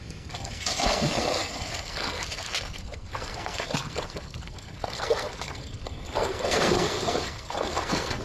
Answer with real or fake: fake